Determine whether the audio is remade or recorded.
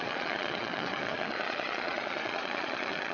remade